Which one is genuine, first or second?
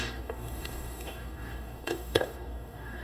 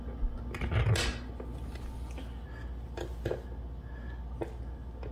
second